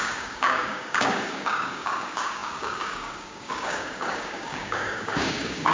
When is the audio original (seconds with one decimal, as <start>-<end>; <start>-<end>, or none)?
none